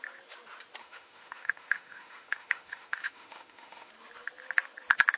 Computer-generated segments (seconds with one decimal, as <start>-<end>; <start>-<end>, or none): 0.8-3.9